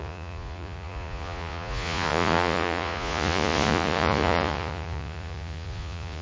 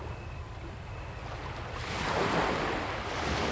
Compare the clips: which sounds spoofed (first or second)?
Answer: first